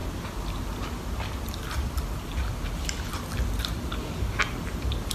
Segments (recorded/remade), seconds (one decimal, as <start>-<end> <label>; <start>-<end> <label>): 0.0-5.1 recorded